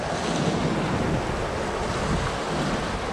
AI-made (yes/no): no